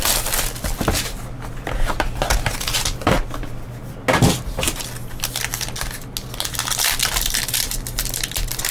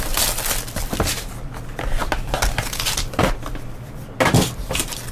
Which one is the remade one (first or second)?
second